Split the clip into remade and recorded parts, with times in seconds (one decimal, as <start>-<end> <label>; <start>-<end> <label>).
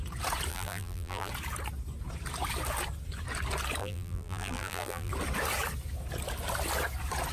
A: 0.0-0.5 recorded; 0.5-1.3 remade; 1.3-3.8 recorded; 3.8-5.1 remade; 5.1-7.3 recorded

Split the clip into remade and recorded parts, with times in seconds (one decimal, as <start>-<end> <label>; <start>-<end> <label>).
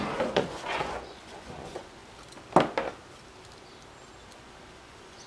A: 0.0-2.0 remade; 2.0-4.3 recorded; 4.3-5.3 remade